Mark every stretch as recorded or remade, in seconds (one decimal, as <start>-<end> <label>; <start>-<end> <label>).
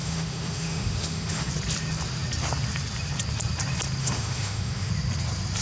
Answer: 0.0-1.5 remade; 1.5-4.0 recorded; 4.0-4.9 remade; 4.9-5.6 recorded